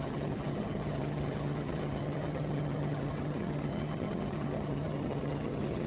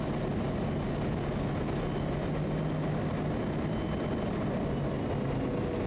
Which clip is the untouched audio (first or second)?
second